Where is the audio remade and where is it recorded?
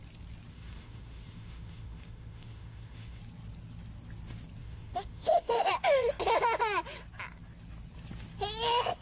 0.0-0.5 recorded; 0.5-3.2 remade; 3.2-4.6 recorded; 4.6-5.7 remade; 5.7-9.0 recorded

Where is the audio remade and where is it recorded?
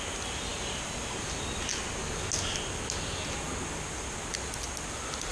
0.0-5.3 recorded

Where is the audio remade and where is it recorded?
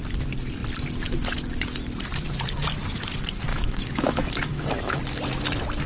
0.0-3.5 recorded; 3.5-5.0 remade; 5.0-5.9 recorded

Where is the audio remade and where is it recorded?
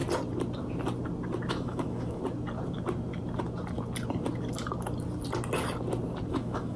0.0-1.5 recorded; 1.5-2.2 remade; 2.2-6.3 recorded; 6.3-6.8 remade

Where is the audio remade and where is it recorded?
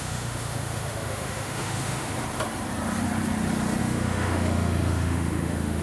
0.0-2.1 remade; 2.1-3.8 recorded; 3.8-5.8 remade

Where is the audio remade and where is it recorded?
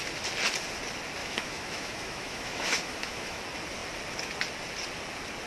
0.0-1.2 recorded; 1.2-3.4 remade; 3.4-5.5 recorded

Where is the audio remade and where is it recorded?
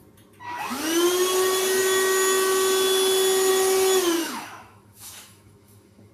0.0-4.2 recorded; 4.2-6.1 remade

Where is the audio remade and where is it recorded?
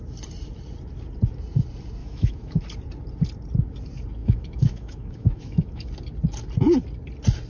0.0-2.0 recorded; 2.0-2.6 remade; 2.6-4.2 recorded; 4.2-5.9 remade; 5.9-7.5 recorded